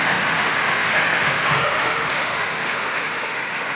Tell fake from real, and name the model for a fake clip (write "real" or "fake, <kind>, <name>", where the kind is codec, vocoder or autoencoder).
fake, autoencoder, DAC-VAE